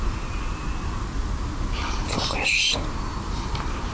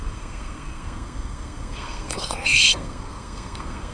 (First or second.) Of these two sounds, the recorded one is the first